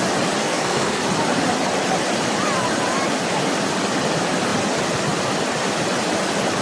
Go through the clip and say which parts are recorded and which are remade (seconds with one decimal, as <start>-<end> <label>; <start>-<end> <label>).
0.0-0.4 recorded; 0.4-1.0 remade; 1.0-6.6 recorded